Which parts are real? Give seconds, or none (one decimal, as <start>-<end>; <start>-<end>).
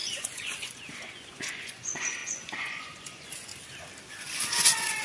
3.5-4.1